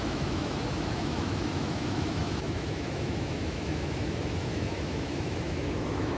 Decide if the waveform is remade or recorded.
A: remade